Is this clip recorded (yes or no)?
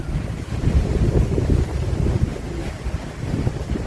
yes